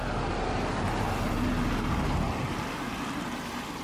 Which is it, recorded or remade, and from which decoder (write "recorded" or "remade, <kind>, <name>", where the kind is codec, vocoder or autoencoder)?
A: recorded